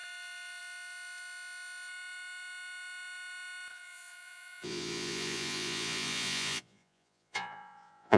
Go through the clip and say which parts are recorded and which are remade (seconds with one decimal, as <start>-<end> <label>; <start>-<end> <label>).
0.0-3.7 recorded; 3.7-8.2 remade